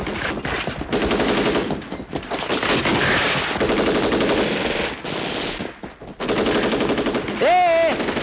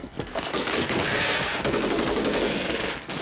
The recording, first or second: first